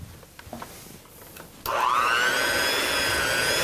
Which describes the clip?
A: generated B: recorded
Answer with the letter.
B